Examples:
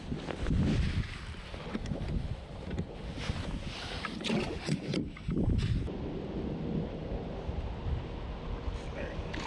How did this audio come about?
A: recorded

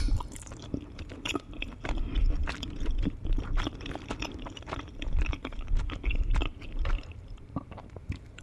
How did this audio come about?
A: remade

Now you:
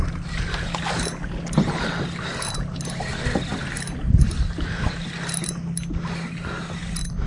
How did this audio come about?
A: recorded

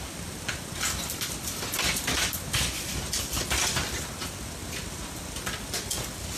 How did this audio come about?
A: remade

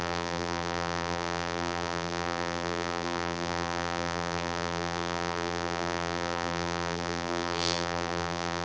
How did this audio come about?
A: remade